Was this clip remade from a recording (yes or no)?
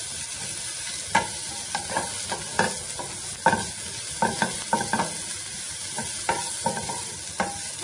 no